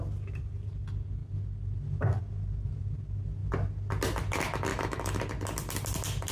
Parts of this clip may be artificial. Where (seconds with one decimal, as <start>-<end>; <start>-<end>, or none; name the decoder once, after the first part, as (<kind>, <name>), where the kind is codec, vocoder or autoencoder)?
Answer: 4.7-5.2 (autoencoder, DAC-VAE)